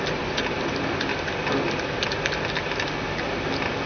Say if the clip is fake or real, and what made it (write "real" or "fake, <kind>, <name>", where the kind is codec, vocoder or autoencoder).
real